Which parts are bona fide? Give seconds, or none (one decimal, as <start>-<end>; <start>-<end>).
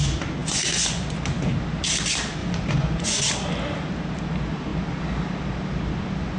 0.0-0.4; 1.2-2.4; 3.2-6.4